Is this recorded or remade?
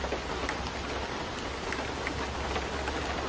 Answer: recorded